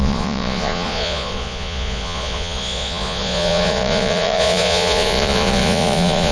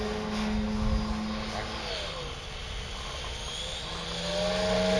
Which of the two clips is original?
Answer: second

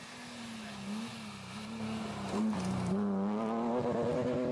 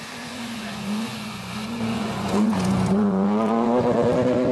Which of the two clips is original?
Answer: first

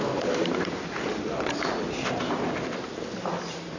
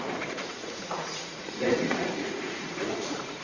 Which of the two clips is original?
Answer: first